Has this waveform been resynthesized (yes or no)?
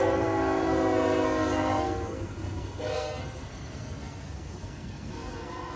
yes